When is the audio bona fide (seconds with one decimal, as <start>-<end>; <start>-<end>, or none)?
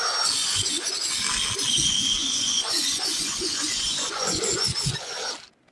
0.0-0.4; 1.1-2.2; 5.3-5.7